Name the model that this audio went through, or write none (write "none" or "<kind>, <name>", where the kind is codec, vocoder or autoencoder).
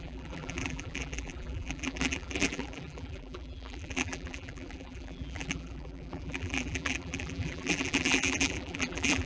vocoder, BigVGAN v2